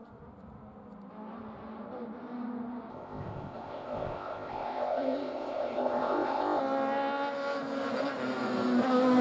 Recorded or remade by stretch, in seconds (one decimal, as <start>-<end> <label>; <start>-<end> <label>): 0.0-2.9 recorded; 2.9-6.6 remade; 6.6-9.2 recorded